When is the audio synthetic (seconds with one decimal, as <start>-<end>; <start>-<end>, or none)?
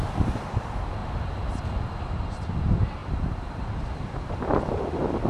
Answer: 0.0-1.0; 2.6-5.3